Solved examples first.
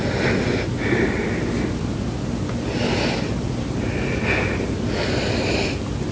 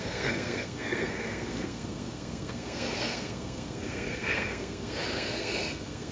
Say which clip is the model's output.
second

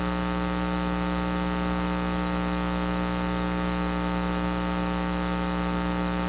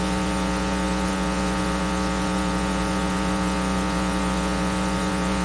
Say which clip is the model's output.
second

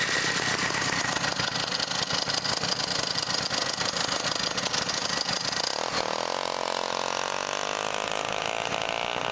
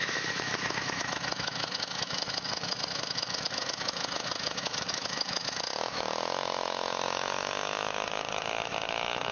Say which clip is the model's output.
second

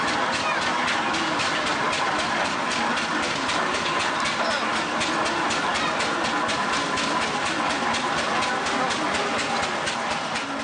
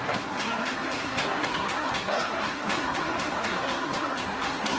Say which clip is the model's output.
second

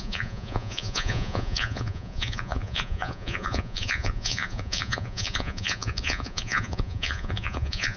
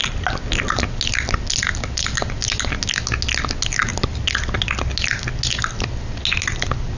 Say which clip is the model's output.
first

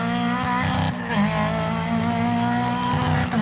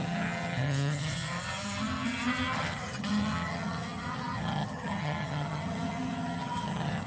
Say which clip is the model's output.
second